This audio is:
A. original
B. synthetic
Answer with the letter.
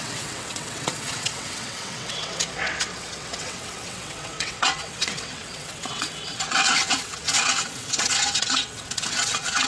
B